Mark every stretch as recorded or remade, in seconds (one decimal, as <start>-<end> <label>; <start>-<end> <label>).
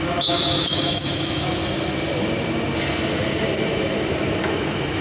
0.0-1.6 remade; 1.6-4.4 recorded; 4.4-5.0 remade